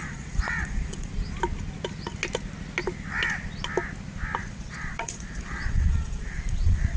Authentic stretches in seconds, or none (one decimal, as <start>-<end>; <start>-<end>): 1.1-4.5